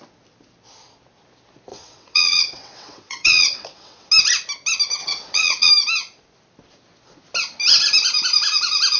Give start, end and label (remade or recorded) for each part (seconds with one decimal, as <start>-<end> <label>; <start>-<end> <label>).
0.0-1.7 recorded; 1.7-4.1 remade; 4.1-5.0 recorded; 5.0-5.7 remade; 5.7-9.0 recorded